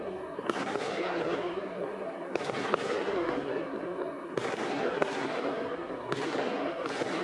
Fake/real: fake